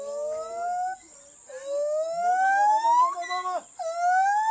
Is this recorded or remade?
recorded